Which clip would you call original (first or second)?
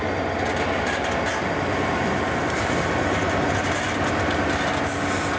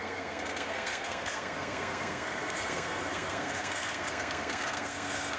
first